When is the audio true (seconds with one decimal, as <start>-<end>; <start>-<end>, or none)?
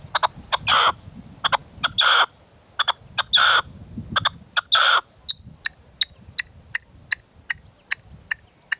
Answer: 0.0-8.8